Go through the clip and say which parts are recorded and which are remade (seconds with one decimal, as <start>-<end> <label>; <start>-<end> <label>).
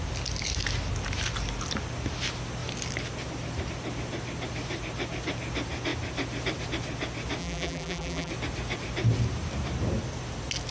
0.0-7.4 recorded; 7.4-8.3 remade; 8.3-10.7 recorded